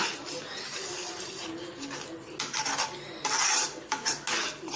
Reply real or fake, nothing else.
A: real